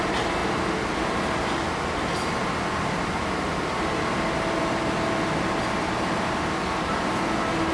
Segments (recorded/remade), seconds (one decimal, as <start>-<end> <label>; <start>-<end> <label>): 0.0-7.7 recorded